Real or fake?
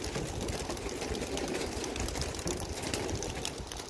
real